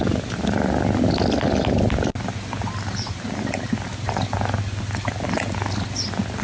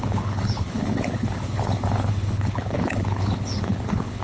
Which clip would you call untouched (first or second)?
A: first